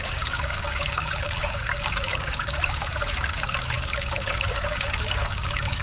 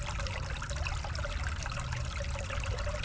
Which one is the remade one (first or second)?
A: first